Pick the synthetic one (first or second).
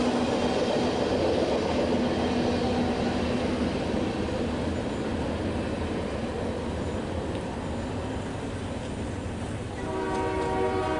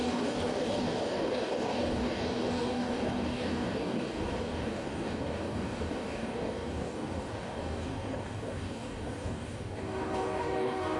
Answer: second